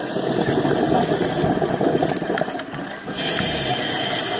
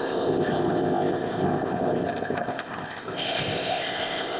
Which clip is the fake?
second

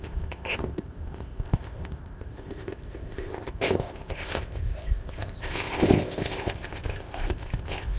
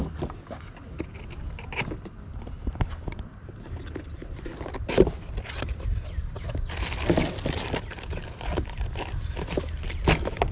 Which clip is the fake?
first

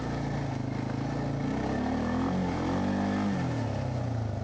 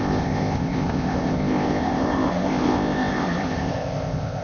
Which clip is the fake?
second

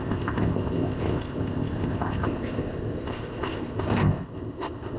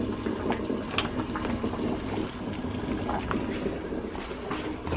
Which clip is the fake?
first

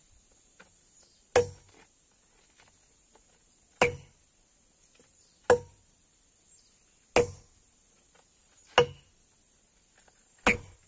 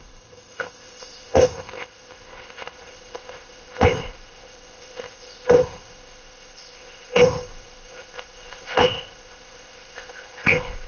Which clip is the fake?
second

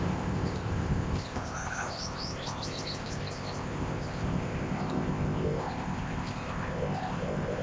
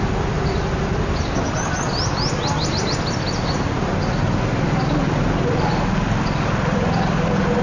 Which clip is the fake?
first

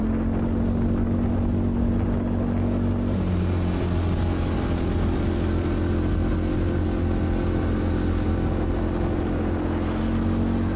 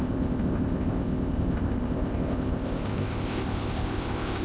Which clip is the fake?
second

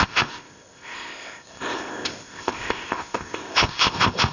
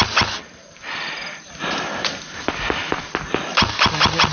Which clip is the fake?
first